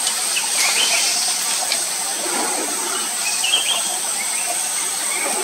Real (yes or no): yes